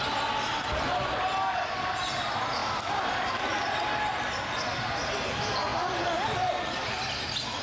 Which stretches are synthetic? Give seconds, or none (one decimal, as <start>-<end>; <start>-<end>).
5.7-6.5